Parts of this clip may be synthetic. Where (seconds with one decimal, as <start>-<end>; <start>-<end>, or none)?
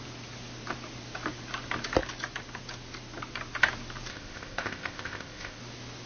4.1-5.6